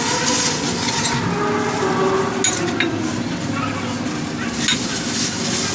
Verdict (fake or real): real